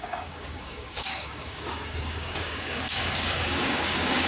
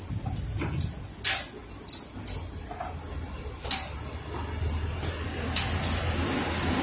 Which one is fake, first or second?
first